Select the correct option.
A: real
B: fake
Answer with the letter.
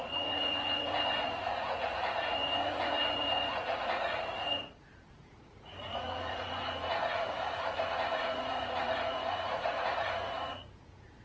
B